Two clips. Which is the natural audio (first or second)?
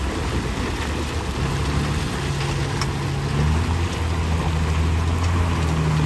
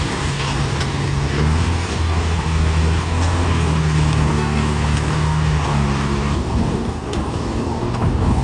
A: first